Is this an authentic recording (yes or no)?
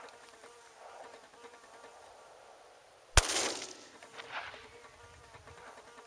yes